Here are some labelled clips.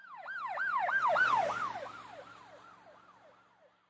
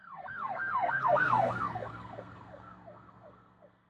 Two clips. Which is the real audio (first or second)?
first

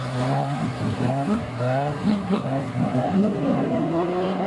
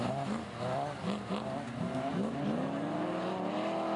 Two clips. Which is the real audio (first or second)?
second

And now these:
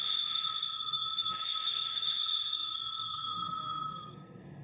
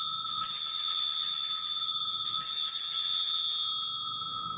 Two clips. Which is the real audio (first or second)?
second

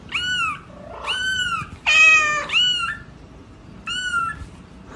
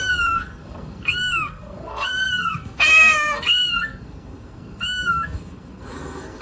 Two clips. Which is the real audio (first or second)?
first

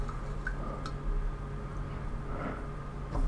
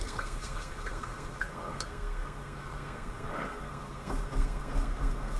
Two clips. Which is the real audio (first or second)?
first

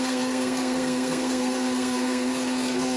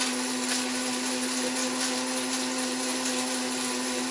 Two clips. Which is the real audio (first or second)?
second